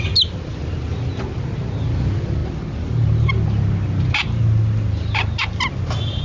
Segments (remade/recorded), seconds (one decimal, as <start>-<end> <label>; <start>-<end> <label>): 0.0-6.2 recorded